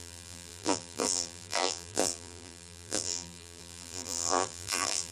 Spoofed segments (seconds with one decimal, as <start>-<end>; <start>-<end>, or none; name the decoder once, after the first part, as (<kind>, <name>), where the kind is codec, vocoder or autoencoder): 0.0-5.1 (vocoder, BigVGAN v2)